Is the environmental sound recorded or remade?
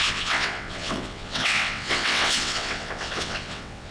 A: remade